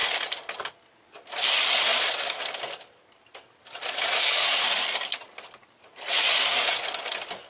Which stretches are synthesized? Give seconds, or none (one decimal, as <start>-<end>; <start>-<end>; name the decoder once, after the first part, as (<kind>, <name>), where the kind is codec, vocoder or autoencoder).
1.9-6.4 (vocoder, BigVGAN v2)